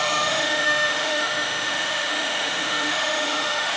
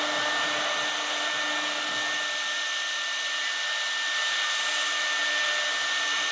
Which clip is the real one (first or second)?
second